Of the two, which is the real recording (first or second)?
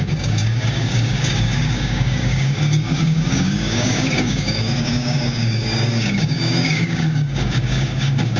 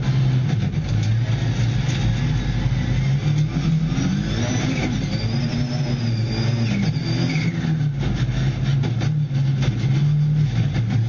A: second